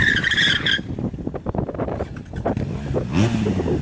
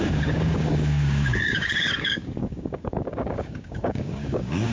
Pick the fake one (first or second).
second